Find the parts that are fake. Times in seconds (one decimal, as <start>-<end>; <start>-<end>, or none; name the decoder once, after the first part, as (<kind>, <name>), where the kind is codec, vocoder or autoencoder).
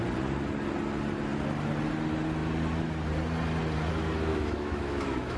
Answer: 4.3-5.4 (autoencoder, DAC-VAE)